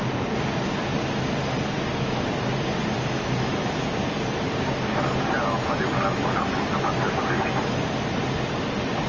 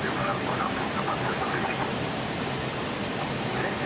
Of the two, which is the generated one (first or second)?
second